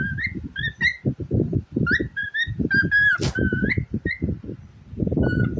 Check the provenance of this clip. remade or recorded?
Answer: recorded